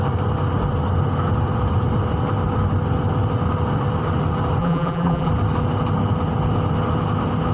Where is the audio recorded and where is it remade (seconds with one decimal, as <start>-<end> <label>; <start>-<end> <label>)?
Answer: 0.0-4.6 recorded; 4.6-5.3 remade; 5.3-7.5 recorded